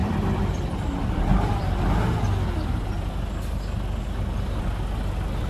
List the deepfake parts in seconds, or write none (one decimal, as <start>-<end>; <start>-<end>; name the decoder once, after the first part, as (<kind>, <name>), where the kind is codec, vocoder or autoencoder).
0.0-0.5 (vocoder, BigVGAN v2); 1.3-1.8